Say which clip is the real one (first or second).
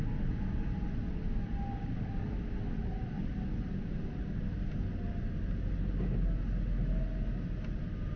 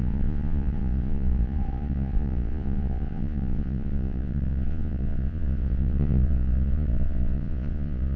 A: first